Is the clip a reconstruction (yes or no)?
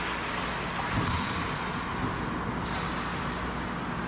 no